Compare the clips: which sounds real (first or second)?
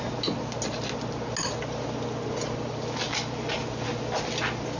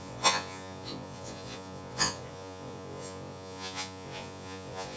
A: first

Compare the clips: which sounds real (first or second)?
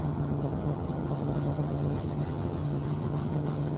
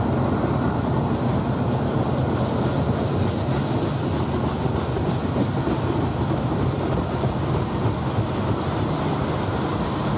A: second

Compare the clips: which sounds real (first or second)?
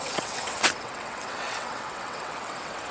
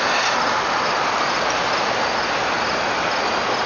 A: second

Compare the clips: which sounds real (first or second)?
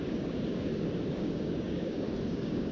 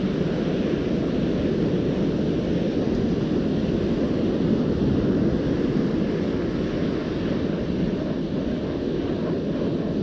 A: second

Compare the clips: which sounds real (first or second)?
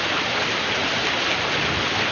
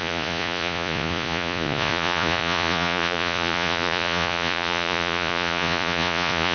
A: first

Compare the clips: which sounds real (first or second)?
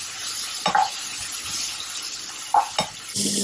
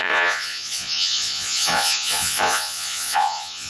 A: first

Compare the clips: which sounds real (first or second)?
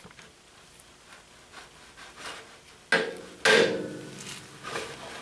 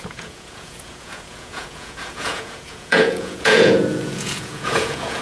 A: first